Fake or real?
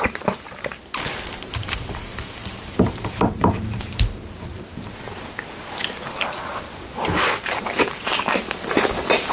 fake